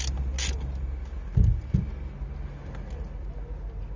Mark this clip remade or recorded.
recorded